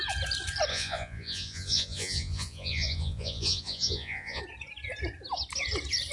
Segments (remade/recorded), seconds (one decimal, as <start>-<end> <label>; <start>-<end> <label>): 0.0-0.7 recorded; 0.7-4.4 remade; 4.4-6.1 recorded

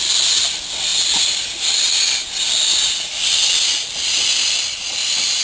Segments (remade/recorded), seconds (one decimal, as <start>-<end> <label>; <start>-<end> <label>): 0.0-0.9 remade; 0.9-2.6 recorded; 2.6-5.4 remade

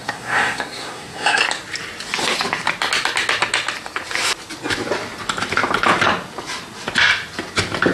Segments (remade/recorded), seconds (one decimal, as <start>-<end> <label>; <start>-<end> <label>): 0.0-1.4 remade; 1.4-7.9 recorded

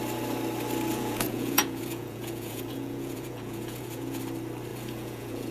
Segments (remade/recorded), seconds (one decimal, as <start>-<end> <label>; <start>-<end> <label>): 0.0-0.9 recorded; 0.9-4.2 remade; 4.2-4.7 recorded; 4.7-5.5 remade

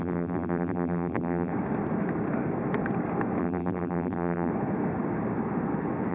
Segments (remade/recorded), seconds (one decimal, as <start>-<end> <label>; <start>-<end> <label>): 0.0-1.5 remade; 1.5-3.4 recorded; 3.4-4.5 remade; 4.5-6.1 recorded